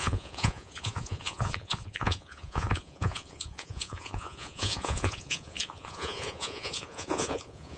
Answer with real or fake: fake